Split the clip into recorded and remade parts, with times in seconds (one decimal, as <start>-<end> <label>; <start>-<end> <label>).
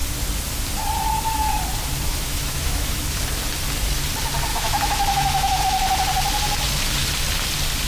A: 0.0-2.1 recorded; 2.1-3.2 remade; 3.2-4.5 recorded; 4.5-5.6 remade; 5.6-7.9 recorded